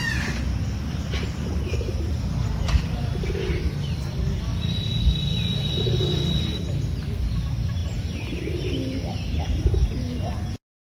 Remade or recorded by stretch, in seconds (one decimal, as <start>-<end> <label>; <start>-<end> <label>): 0.0-10.8 recorded